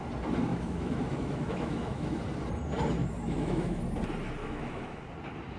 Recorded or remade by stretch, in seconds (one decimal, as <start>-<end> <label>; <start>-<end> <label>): 0.0-0.5 recorded; 0.5-2.2 remade; 2.2-3.0 recorded; 3.0-3.8 remade; 3.8-4.4 recorded; 4.4-5.0 remade; 5.0-5.6 recorded